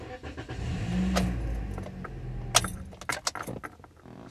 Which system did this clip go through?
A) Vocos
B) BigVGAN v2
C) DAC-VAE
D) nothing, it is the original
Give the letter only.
D